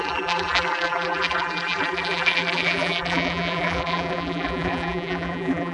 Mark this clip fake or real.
fake